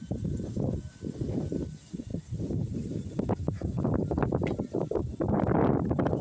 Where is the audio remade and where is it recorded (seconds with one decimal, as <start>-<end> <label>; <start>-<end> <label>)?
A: 0.0-6.2 recorded